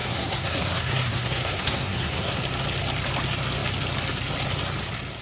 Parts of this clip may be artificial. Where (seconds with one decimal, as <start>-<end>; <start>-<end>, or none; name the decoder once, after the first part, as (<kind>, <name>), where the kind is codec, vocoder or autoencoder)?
0.0-2.4 (codec, SNAC)